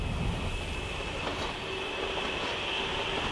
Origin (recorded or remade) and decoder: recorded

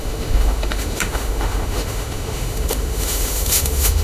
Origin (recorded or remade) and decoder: remade, autoencoder, DAC-VAE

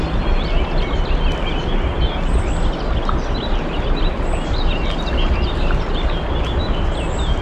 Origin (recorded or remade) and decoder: recorded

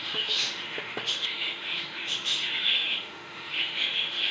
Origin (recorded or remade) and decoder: remade, autoencoder, DAC-VAE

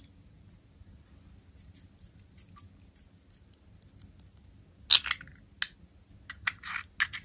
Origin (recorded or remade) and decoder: recorded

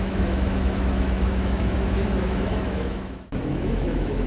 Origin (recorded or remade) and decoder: remade, autoencoder, DAC-VAE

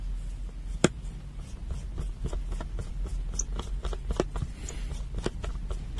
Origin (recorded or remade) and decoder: recorded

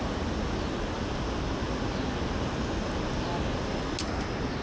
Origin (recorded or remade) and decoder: recorded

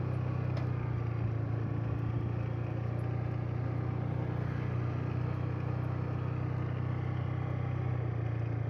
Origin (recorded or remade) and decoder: recorded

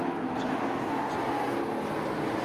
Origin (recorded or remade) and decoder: recorded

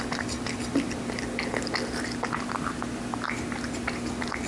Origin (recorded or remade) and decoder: recorded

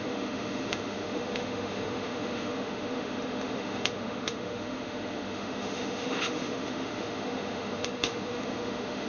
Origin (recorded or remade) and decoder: remade, autoencoder, DAC-VAE